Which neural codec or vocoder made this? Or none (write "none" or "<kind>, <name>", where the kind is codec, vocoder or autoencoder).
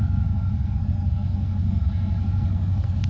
codec, SNAC